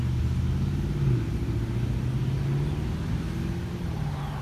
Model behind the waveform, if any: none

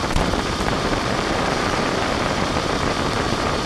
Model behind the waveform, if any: vocoder, BigVGAN v2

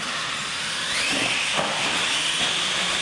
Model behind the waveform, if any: none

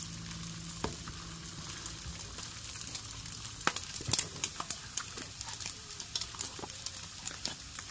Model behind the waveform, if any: none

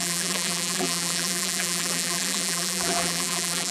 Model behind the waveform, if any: vocoder, BigVGAN v2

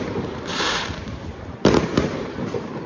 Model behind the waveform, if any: vocoder, BigVGAN v2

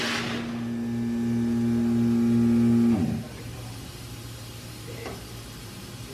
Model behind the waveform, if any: none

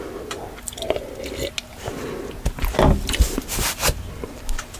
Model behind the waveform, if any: none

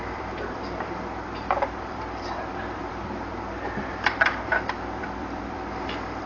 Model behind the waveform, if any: vocoder, BigVGAN v2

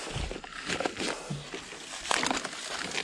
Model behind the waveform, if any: none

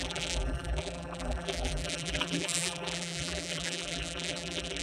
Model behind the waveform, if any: vocoder, BigVGAN v2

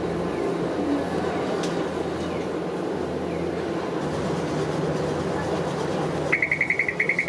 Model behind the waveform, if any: none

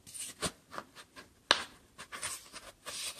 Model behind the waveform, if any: none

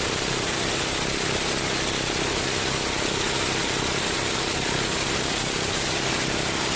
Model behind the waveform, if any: none